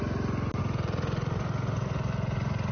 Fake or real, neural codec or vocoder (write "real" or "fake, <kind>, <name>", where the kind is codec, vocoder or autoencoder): real